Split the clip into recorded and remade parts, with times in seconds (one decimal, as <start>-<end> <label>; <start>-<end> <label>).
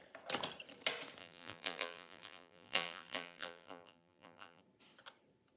0.0-1.2 recorded; 1.2-4.6 remade; 4.6-5.6 recorded